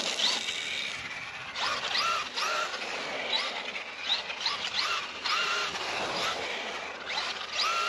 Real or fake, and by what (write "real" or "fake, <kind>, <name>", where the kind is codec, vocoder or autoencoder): real